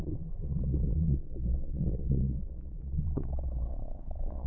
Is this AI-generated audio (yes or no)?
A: yes